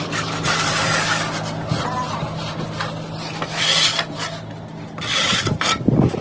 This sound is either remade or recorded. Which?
recorded